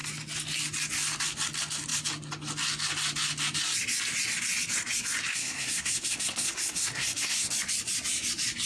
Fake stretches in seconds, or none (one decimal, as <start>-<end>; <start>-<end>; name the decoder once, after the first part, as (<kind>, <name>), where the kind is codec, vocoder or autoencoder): 5.3-7.5 (codec, SNAC)